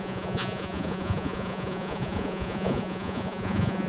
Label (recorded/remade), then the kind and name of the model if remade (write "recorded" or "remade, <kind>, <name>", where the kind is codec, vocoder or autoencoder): remade, vocoder, Vocos